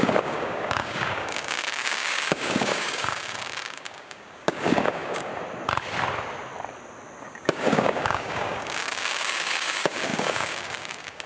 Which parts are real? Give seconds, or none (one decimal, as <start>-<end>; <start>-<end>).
5.3-7.2